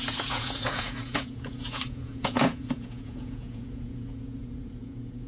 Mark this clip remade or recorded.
remade